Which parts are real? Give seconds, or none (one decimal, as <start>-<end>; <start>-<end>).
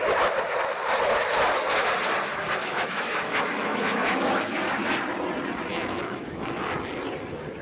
0.0-2.6; 4.6-5.7; 6.6-7.6